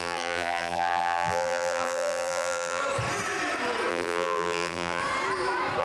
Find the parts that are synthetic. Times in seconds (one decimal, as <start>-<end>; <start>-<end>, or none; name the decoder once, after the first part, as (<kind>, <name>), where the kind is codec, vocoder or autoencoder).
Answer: 0.0-2.8 (vocoder, BigVGAN v2); 3.9-5.0